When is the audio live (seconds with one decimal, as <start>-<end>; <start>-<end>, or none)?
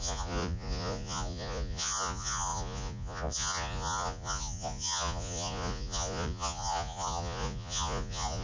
none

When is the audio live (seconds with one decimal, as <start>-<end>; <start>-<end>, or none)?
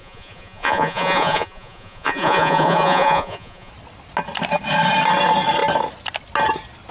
3.7-6.9